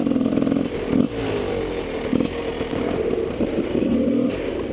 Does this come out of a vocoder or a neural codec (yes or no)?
no